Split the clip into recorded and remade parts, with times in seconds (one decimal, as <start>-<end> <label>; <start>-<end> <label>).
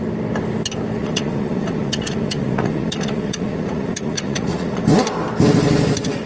0.0-1.0 recorded; 1.0-4.8 remade; 4.8-6.3 recorded